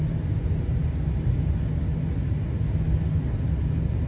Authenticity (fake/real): real